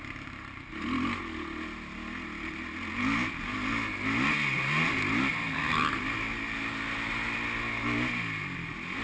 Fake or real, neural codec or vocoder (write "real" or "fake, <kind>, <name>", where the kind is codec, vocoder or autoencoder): real